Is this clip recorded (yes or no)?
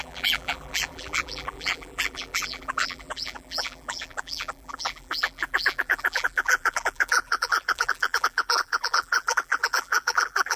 no